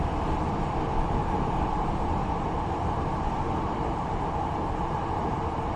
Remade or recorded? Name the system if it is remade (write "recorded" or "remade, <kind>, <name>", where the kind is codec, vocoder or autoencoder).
recorded